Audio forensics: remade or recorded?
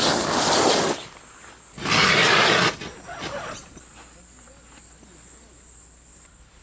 recorded